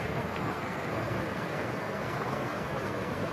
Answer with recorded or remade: remade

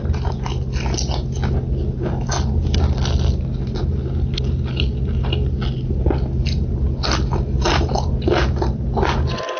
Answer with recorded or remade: recorded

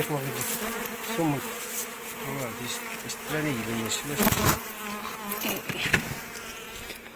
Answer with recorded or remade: recorded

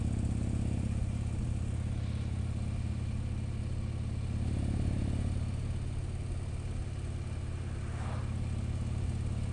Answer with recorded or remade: recorded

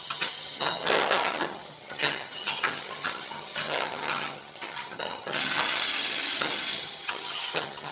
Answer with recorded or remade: remade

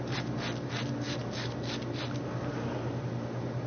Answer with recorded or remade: recorded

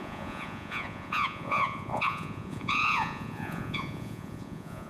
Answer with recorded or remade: remade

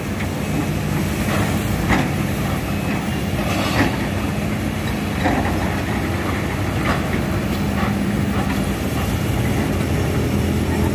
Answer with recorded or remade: recorded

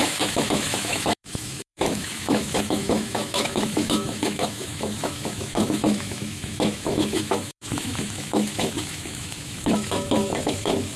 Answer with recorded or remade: remade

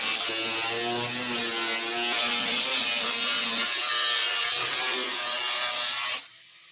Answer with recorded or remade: recorded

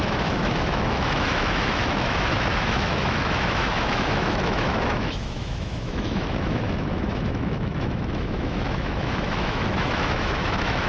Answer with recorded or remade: remade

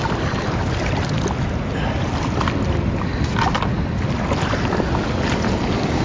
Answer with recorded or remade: recorded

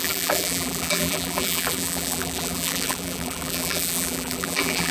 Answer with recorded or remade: remade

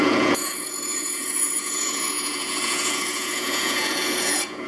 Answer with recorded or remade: remade